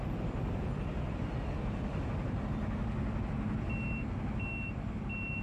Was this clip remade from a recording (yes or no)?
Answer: no